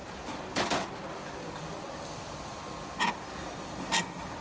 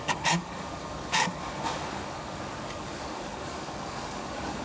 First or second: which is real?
first